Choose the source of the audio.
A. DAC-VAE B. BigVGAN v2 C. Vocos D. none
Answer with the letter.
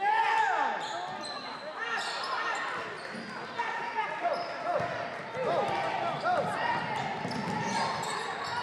D